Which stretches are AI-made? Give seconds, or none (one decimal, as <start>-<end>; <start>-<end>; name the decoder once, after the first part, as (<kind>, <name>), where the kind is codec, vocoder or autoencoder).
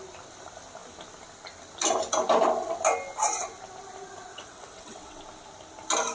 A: 4.3-5.2 (vocoder, WaveNeXt)